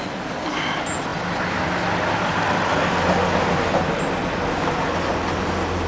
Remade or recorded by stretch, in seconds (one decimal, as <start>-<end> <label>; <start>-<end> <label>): 0.0-5.9 recorded